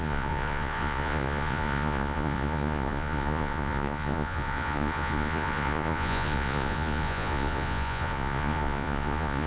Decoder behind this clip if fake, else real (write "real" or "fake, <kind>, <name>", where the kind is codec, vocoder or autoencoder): fake, vocoder, Vocos